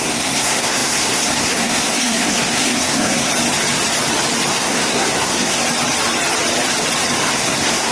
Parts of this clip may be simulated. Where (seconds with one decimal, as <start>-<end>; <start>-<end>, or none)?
0.0-3.3; 4.5-5.6; 7.3-7.9